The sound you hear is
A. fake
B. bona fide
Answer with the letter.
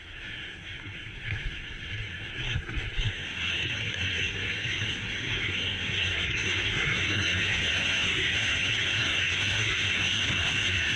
A